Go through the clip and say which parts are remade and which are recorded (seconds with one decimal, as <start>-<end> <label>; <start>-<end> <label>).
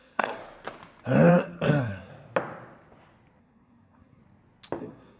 0.0-0.4 remade; 0.4-1.3 recorded; 1.3-2.1 remade; 2.1-3.4 recorded; 3.4-4.2 remade; 4.2-4.8 recorded; 4.8-5.2 remade